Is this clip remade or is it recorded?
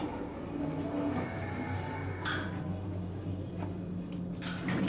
recorded